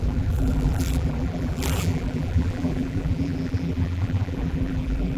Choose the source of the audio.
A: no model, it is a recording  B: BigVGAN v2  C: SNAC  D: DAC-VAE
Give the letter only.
B